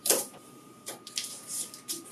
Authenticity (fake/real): fake